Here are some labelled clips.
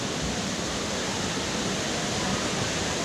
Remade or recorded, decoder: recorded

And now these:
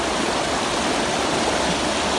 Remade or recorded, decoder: recorded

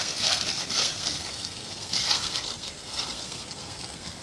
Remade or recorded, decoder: remade, codec, SNAC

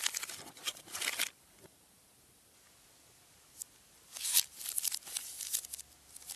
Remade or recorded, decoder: recorded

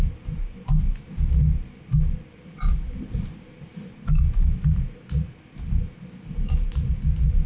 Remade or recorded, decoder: recorded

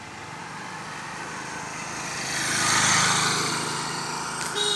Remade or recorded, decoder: recorded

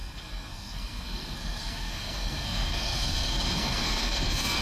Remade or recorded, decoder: remade, codec, SNAC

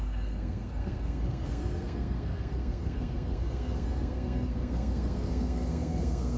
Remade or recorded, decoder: remade, codec, SNAC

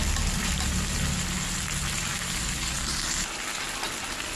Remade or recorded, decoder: recorded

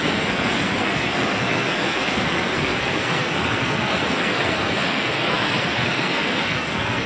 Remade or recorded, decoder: remade, codec, SNAC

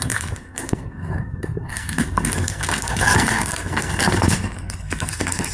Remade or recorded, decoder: remade, codec, SNAC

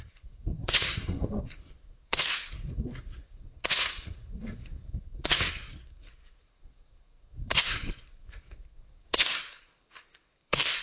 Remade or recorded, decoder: remade, codec, SNAC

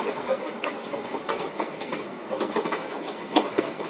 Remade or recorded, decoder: remade, codec, SNAC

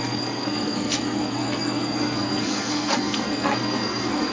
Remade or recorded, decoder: remade, codec, SNAC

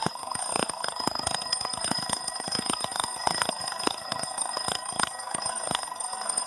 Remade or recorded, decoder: remade, codec, SNAC